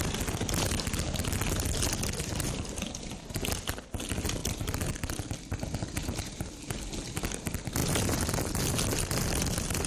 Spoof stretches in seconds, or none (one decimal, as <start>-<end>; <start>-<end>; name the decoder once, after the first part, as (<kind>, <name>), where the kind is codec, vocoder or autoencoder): 4.4-5.1 (vocoder, BigVGAN v2); 6.0-6.5

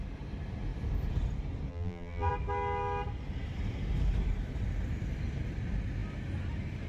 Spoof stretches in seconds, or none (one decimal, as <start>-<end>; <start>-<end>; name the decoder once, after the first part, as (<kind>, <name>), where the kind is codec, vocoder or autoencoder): 1.7-2.3 (vocoder, BigVGAN v2)

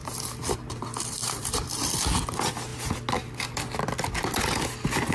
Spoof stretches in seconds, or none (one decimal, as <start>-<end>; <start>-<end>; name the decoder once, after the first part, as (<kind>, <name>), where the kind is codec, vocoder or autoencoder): 0.0-1.9 (vocoder, BigVGAN v2)

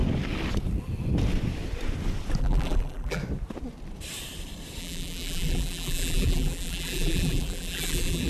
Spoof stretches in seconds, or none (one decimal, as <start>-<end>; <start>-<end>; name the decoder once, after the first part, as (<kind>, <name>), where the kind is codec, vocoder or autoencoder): 2.4-3.2 (vocoder, BigVGAN v2); 4.8-8.3